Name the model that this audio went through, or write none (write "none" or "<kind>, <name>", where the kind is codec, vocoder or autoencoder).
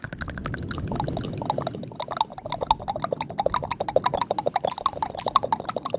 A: none